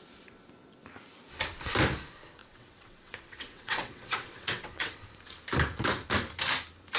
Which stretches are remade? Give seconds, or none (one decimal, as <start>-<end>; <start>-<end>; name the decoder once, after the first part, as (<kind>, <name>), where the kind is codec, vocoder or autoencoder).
2.4-5.0 (vocoder, WaveNeXt)